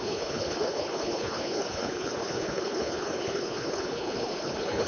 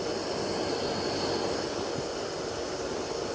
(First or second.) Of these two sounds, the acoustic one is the second